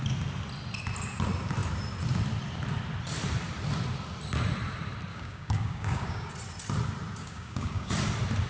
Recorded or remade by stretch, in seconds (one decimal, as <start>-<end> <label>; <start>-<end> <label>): 0.0-5.1 recorded; 5.1-6.3 remade; 6.3-7.2 recorded; 7.2-7.9 remade; 7.9-8.5 recorded